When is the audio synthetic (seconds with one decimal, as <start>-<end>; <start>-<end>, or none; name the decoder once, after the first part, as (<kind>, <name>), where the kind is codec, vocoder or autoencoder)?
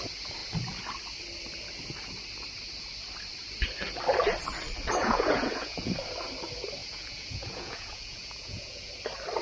5.0-5.9 (vocoder, Vocos); 6.8-8.9